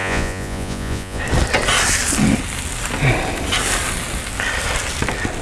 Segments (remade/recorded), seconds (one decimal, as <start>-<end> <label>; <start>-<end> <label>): 0.0-1.2 remade; 1.2-5.4 recorded